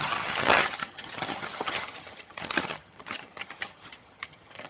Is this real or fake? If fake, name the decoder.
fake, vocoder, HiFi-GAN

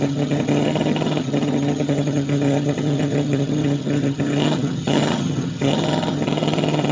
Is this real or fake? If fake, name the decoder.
fake, vocoder, HiFi-GAN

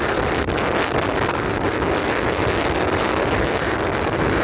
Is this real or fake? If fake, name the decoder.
real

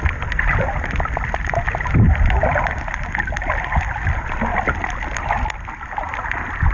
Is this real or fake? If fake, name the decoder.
real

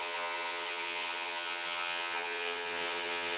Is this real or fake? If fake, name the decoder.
fake, vocoder, HiFi-GAN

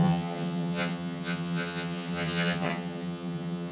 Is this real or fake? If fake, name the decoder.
fake, vocoder, HiFi-GAN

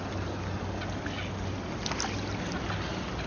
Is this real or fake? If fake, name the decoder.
real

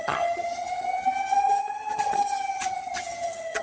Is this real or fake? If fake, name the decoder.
fake, vocoder, HiFi-GAN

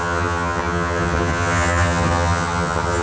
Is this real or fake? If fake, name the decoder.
fake, vocoder, HiFi-GAN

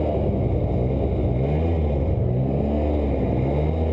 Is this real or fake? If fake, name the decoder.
real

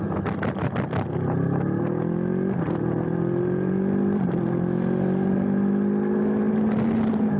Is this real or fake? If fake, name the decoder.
real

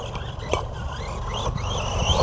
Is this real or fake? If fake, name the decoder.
real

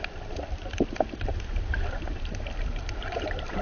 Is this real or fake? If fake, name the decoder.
real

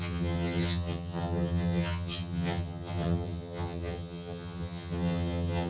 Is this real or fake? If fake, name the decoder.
fake, vocoder, HiFi-GAN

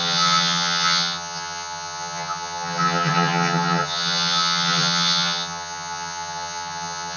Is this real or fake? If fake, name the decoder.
fake, vocoder, HiFi-GAN